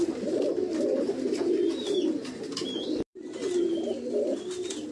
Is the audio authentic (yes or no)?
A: yes